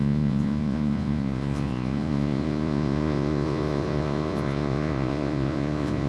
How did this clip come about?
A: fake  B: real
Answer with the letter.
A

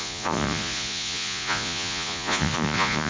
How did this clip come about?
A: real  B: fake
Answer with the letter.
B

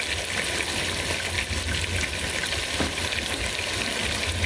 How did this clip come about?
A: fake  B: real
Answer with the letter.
B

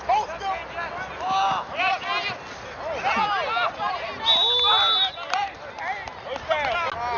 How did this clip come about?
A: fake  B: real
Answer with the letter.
B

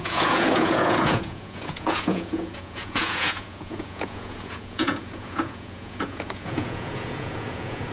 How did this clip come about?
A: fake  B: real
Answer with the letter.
A